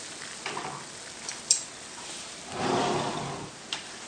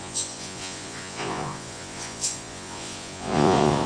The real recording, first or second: first